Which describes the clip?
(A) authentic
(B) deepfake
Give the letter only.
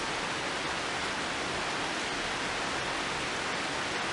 A